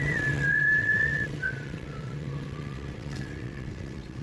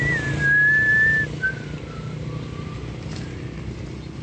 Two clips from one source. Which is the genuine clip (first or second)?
second